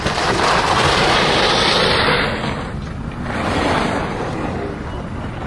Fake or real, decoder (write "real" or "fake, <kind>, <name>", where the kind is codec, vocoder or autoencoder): real